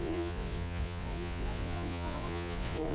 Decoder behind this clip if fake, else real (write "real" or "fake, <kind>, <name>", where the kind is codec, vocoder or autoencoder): fake, vocoder, Vocos